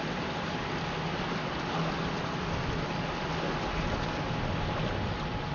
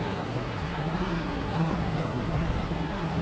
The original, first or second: first